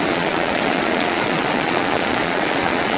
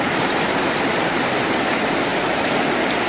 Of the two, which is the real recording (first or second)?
second